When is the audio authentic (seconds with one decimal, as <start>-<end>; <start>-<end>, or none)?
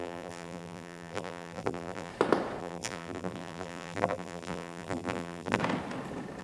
2.1-2.6; 5.6-6.4